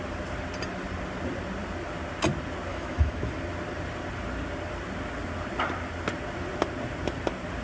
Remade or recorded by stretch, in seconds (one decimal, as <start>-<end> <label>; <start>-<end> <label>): 0.0-2.7 recorded; 2.7-3.3 remade; 3.3-7.6 recorded